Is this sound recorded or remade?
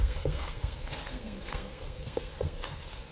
remade